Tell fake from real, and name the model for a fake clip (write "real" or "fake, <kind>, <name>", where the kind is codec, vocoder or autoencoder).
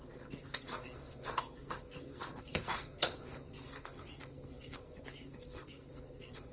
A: fake, codec, SNAC